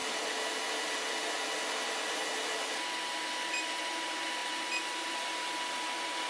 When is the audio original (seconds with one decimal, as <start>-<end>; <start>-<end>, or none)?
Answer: 0.0-6.3